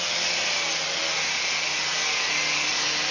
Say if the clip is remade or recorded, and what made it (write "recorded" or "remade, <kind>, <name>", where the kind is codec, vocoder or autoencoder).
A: recorded